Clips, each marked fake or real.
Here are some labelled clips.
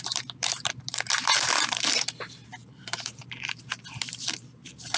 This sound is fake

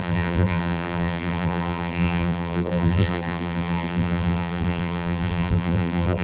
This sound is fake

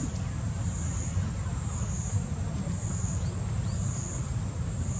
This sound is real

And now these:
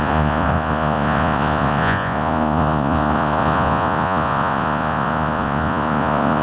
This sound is fake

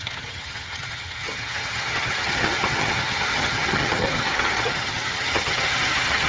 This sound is fake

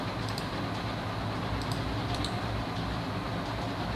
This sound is real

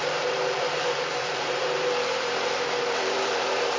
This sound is fake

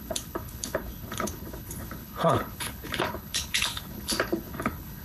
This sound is fake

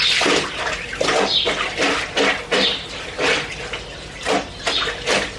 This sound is real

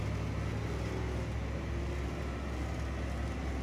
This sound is real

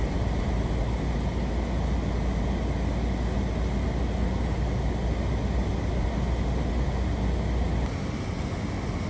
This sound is real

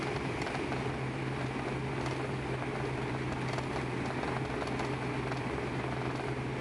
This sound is real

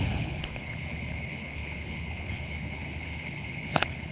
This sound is fake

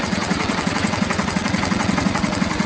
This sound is fake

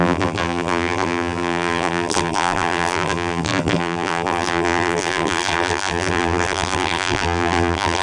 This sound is fake